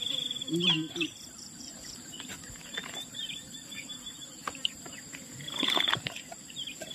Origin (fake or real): fake